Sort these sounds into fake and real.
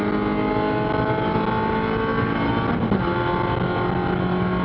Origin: real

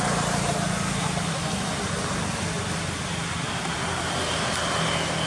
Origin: real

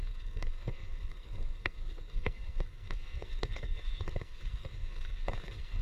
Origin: fake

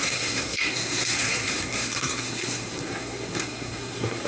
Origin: fake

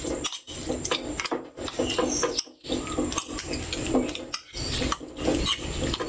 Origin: real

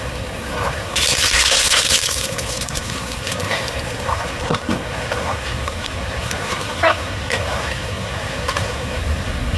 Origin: fake